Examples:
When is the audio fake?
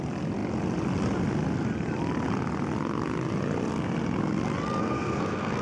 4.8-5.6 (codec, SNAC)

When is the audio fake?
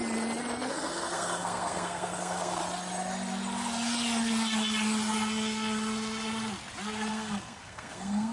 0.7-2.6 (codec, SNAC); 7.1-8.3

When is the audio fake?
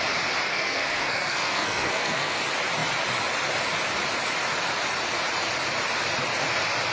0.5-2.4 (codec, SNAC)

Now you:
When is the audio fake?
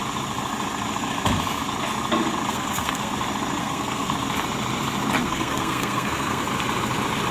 2.5-3.1 (codec, SNAC); 3.6-4.1; 5.2-6.4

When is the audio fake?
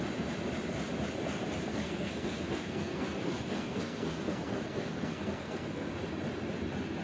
1.7-5.9 (codec, SNAC)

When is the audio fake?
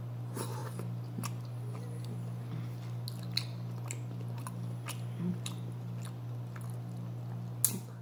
none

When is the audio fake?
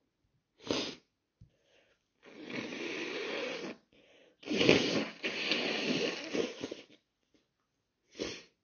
none